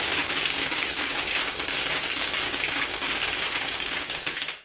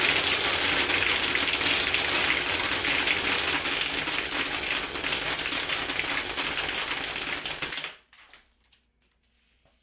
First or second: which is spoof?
first